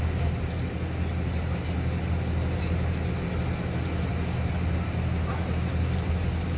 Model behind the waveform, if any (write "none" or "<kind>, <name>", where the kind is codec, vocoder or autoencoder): none